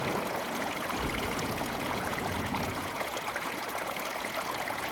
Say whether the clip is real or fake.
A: fake